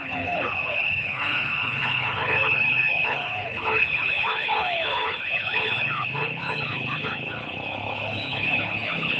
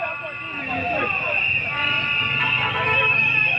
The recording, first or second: second